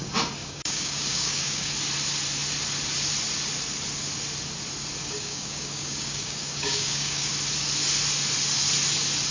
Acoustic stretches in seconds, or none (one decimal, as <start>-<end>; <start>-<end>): 0.0-0.4; 1.7-5.0; 7.3-9.3